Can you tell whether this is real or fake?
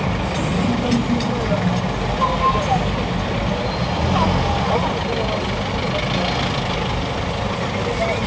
real